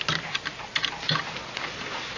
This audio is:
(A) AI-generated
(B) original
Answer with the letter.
B